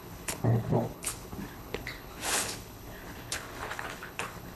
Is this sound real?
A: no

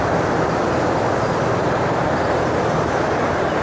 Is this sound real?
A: no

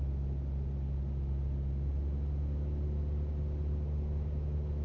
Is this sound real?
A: yes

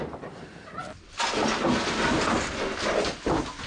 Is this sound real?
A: yes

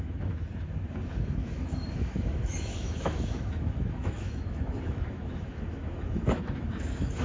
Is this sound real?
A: no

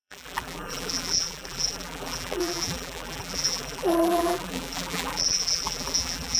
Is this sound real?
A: no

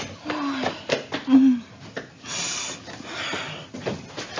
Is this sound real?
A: yes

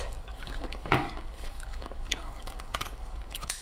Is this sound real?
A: no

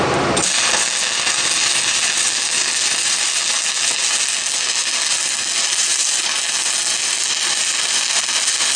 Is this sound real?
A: yes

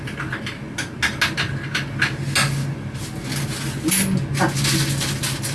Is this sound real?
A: yes